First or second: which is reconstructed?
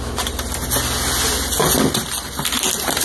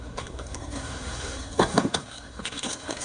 second